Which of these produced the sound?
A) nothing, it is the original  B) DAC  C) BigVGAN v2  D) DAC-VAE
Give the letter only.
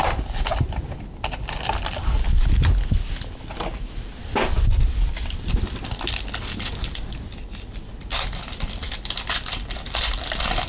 A